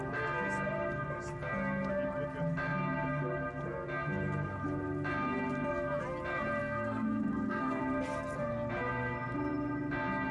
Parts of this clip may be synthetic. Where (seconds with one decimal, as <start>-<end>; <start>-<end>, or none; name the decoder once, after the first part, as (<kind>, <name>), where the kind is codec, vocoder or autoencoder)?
6.6-7.8 (codec, SNAC)